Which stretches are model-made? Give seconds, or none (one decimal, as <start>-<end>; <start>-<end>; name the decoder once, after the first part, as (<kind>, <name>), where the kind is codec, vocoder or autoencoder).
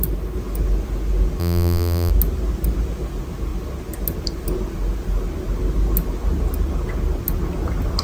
1.4-2.1 (vocoder, BigVGAN v2)